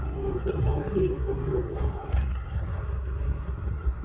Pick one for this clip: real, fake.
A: fake